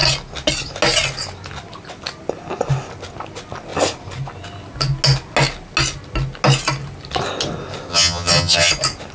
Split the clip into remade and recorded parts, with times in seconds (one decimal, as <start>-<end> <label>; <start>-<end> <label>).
0.0-7.9 recorded; 7.9-8.7 remade; 8.7-9.1 recorded